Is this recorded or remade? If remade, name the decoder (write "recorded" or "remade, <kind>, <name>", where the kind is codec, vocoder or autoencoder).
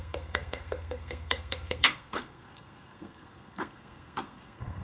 remade, codec, SNAC